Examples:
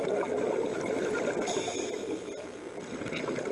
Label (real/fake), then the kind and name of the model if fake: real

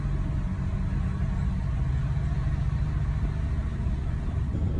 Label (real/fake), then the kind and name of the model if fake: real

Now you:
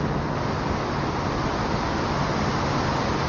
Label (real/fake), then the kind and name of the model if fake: real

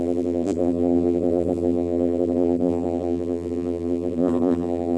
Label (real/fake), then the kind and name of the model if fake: fake, vocoder, BigVGAN v2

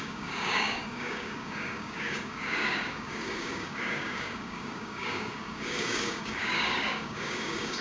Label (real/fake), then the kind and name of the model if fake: fake, codec, DAC